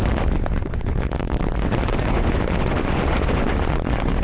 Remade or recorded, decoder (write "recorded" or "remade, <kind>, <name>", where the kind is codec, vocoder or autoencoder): remade, vocoder, Vocos